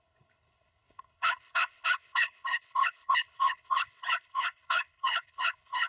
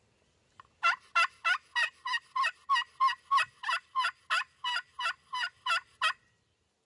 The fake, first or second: first